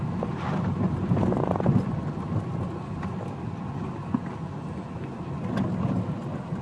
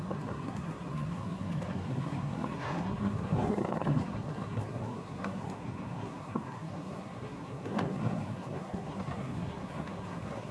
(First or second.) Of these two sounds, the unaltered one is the first